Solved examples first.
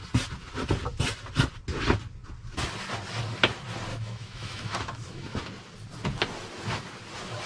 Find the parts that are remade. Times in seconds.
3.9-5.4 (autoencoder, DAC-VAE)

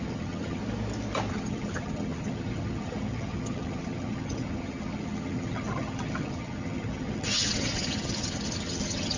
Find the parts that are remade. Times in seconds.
0.0-0.6 (vocoder, HiFi-GAN); 1.3-9.2

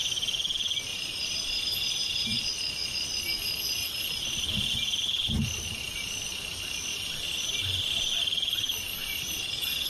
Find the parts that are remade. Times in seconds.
0.9-2.4 (vocoder, BigVGAN v2); 6.9-9.3

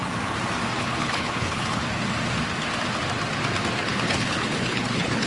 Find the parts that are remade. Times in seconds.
0.8-1.8 (codec, HILCodec); 3.8-5.3

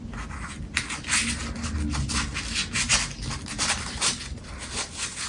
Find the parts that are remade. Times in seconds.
none

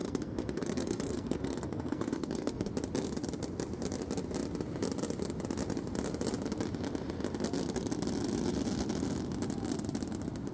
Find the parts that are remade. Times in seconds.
0.0-2.7 (codec, SNAC)